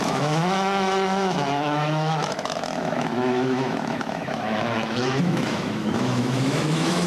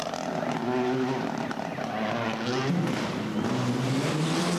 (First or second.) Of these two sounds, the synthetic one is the first